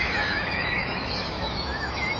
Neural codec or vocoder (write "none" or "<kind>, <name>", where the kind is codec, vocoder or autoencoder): autoencoder, DAC-VAE